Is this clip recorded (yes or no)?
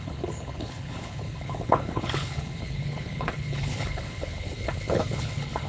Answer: no